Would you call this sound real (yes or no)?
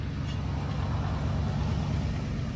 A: yes